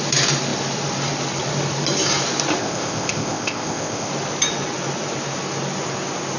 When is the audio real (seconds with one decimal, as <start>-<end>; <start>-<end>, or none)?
0.0-2.6; 4.1-6.4